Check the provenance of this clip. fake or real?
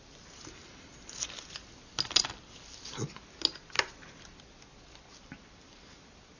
real